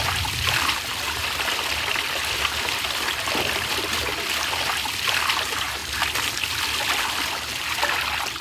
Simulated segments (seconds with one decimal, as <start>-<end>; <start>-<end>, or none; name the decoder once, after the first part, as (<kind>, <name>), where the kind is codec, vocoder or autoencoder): 1.2-4.8 (vocoder, BigVGAN v2)